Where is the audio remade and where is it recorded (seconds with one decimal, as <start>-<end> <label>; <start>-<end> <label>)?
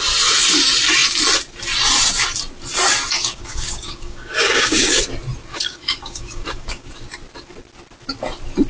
0.0-3.2 recorded; 3.2-5.0 remade; 5.0-5.5 recorded; 5.5-6.9 remade; 6.9-8.7 recorded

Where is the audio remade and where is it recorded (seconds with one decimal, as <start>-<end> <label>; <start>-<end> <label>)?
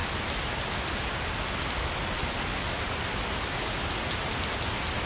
0.0-5.1 recorded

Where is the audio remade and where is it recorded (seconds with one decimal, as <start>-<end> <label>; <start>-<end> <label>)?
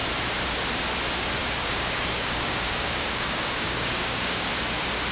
0.0-1.4 recorded; 1.4-4.5 remade; 4.5-5.1 recorded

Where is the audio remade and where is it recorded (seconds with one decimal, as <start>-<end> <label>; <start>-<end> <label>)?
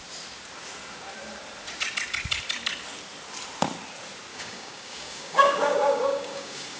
0.0-4.3 recorded; 4.3-6.8 remade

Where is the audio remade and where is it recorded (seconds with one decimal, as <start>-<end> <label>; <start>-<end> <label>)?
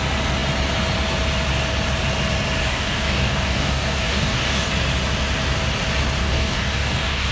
0.0-2.6 recorded; 2.6-4.7 remade; 4.7-6.2 recorded; 6.2-7.3 remade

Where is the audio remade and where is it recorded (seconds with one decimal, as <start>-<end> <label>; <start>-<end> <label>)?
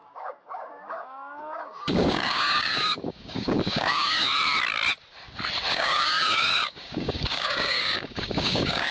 0.0-4.3 remade; 4.3-5.7 recorded; 5.7-8.9 remade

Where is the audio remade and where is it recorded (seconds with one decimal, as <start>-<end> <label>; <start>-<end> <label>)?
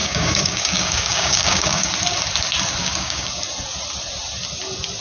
0.0-1.9 remade; 1.9-2.8 recorded; 2.8-3.4 remade; 3.4-5.0 recorded